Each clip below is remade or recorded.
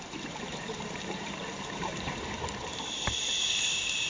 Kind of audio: remade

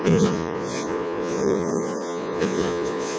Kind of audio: remade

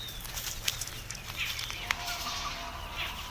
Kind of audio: remade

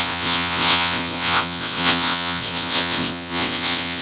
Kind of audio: remade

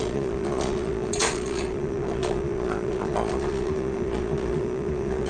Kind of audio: remade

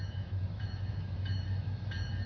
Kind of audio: remade